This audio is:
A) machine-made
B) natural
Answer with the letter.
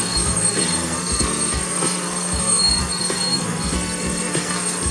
A